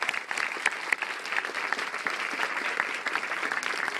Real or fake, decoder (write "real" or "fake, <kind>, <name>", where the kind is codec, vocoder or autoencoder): real